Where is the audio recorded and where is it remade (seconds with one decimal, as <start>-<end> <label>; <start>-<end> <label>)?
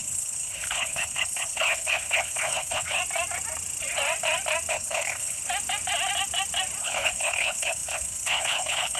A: 0.0-3.0 remade; 3.0-4.7 recorded; 4.7-5.4 remade; 5.4-6.8 recorded; 6.8-9.0 remade